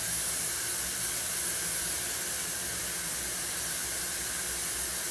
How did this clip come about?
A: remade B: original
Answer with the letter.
B